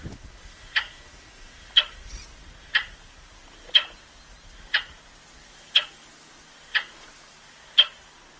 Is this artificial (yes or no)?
no